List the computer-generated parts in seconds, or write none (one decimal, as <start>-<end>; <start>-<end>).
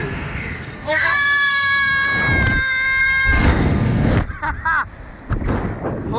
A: 0.0-1.9; 3.0-4.1